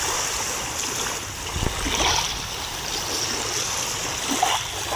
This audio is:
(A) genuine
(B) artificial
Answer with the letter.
A